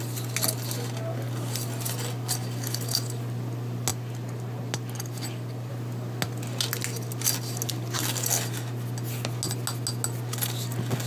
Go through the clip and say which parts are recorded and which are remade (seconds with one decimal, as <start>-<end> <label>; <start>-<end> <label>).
0.0-11.1 recorded